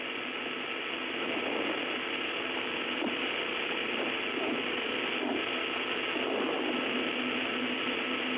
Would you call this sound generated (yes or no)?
no